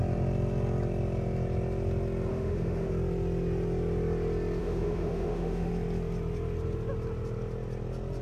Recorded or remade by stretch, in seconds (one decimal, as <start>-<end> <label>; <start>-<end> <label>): 0.0-2.3 recorded; 2.3-2.9 remade; 2.9-4.6 recorded; 4.6-5.7 remade; 5.7-8.2 recorded

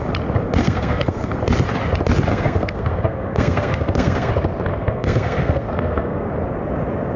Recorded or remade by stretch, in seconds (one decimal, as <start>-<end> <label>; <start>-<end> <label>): 0.0-0.6 recorded; 0.6-1.4 remade; 1.4-2.3 recorded; 2.3-4.3 remade; 4.3-4.7 recorded; 4.7-6.3 remade; 6.3-7.2 recorded

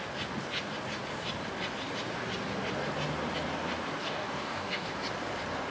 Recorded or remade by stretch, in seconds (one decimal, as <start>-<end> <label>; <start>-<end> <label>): 0.0-4.0 recorded; 4.0-4.9 remade; 4.9-5.7 recorded

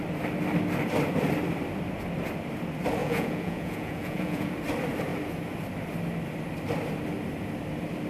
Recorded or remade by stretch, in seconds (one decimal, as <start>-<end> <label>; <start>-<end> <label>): 0.0-3.0 recorded; 3.0-4.5 remade; 4.5-8.1 recorded

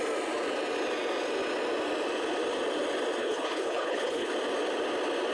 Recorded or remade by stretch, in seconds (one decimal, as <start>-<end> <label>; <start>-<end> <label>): 0.0-3.2 recorded; 3.2-4.3 remade; 4.3-5.3 recorded

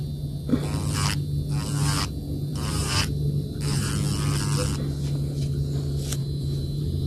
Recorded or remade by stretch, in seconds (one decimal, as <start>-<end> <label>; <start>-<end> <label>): 0.0-2.5 recorded; 2.5-3.9 remade; 3.9-6.2 recorded; 6.2-7.1 remade